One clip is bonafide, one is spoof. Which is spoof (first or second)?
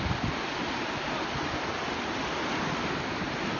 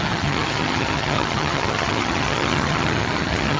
second